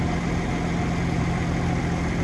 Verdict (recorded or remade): recorded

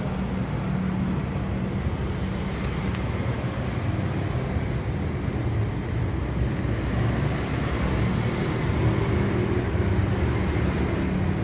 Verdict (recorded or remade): recorded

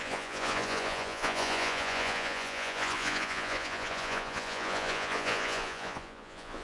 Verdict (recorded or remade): remade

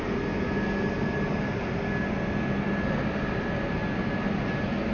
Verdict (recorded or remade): recorded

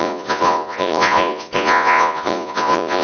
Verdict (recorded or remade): remade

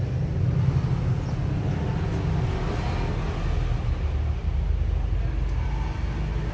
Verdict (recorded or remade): recorded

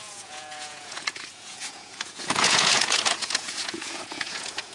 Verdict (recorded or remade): remade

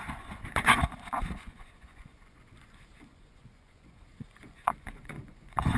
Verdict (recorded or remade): remade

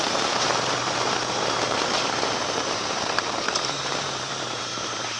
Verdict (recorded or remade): remade